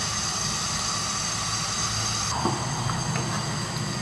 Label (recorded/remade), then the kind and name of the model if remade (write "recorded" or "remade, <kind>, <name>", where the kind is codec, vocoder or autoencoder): recorded